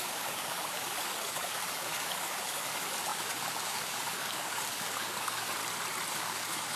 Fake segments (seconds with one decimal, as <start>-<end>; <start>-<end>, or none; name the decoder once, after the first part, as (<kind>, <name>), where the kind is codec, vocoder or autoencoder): 0.0-5.6 (codec, DAC); 6.1-6.8